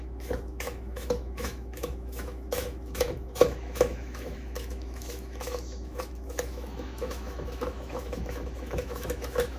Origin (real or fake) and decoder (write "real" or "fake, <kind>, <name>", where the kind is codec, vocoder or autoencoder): fake, autoencoder, DAC-VAE